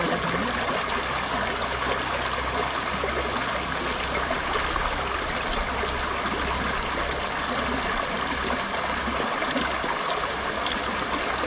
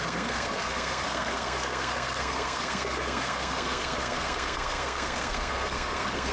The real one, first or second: first